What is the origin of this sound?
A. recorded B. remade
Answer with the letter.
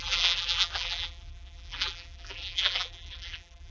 B